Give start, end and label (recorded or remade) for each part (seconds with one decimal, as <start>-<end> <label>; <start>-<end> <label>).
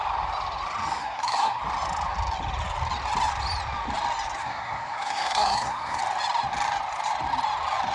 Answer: 0.0-1.0 recorded; 1.0-1.6 remade; 1.6-4.4 recorded; 4.4-6.0 remade; 6.0-7.9 recorded